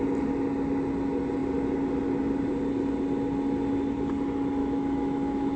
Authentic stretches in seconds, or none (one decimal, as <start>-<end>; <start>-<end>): 0.0-4.6